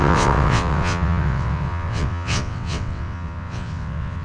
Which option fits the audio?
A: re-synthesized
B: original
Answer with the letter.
A